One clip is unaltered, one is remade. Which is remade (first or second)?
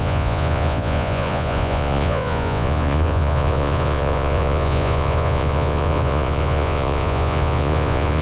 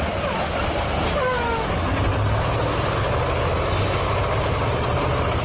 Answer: first